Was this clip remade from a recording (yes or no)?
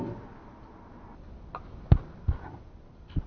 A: no